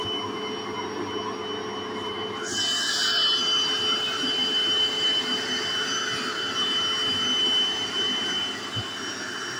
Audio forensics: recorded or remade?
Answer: recorded